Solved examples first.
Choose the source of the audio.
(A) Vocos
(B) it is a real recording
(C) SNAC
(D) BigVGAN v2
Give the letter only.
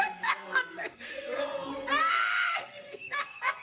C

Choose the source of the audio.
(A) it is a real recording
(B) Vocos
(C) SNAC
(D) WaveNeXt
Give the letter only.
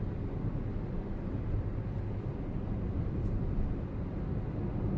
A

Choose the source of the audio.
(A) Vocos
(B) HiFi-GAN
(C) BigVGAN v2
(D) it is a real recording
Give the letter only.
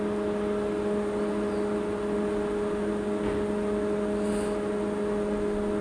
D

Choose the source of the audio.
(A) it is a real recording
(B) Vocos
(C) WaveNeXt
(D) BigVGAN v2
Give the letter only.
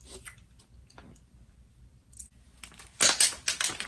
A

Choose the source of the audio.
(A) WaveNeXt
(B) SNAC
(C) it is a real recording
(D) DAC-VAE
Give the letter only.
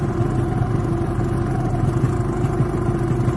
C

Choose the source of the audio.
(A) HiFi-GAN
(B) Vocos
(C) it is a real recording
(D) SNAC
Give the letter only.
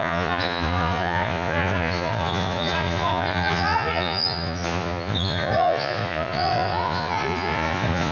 B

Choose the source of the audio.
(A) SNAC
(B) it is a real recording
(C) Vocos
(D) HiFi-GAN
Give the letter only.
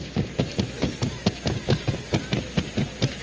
B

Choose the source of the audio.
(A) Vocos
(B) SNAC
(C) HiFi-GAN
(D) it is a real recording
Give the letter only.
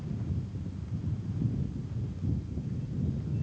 D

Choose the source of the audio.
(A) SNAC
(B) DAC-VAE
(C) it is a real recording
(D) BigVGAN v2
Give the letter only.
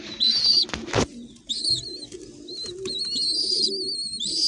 C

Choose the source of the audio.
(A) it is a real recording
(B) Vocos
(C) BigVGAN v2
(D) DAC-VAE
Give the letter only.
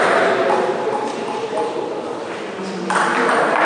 C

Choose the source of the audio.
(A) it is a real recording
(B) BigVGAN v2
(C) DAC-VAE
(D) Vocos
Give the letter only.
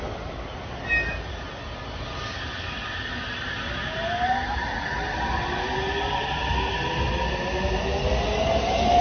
A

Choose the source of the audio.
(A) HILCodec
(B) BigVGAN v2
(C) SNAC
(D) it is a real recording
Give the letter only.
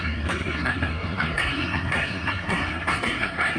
C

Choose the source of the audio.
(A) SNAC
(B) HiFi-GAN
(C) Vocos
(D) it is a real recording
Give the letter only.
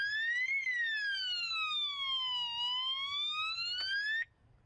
D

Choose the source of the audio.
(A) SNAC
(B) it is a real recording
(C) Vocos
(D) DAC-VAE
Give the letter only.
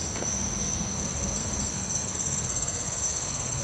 A